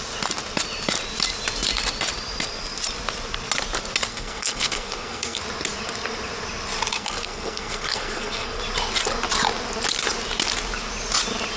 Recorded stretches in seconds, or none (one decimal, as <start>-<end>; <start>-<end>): 0.0-4.1; 5.4-6.9; 8.6-11.6